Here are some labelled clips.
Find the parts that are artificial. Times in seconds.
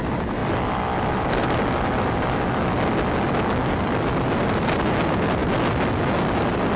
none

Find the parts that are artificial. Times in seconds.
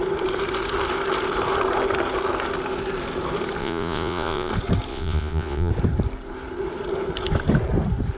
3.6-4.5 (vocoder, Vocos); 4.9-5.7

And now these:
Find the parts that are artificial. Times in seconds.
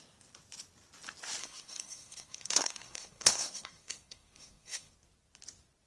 1.4-4.9 (codec, SNAC)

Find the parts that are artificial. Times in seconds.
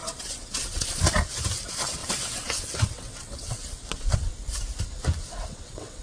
0.0-1.1 (vocoder, WaveNeXt); 2.0-4.3; 5.5-6.0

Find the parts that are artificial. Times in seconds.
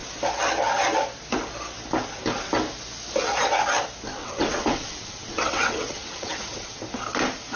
4.2-6.8 (vocoder, WaveNeXt)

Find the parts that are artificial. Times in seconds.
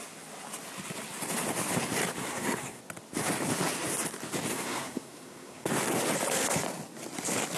2.2-2.8 (codec, SNAC); 4.5-5.7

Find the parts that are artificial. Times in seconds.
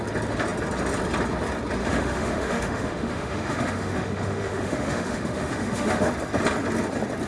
1.8-6.1 (autoencoder, DAC-VAE)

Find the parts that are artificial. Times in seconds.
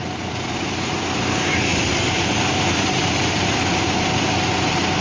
1.7-3.9 (vocoder, BigVGAN v2)